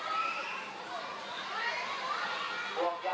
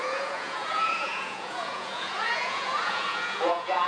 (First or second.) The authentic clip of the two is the first